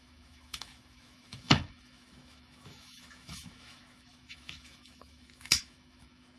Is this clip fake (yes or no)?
yes